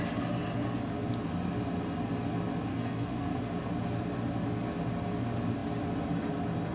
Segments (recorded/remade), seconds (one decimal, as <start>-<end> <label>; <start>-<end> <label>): 0.0-2.7 recorded; 2.7-3.4 remade; 3.4-6.7 recorded